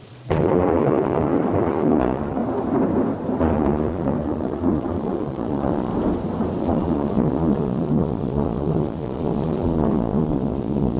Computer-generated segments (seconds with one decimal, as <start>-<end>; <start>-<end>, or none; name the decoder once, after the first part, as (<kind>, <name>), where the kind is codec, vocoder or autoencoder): 0.0-2.4 (vocoder, Vocos); 3.4-5.9; 6.6-11.0